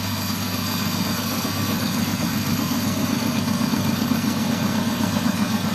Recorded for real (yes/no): no